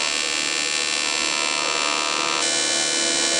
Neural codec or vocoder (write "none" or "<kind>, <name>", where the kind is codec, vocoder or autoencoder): none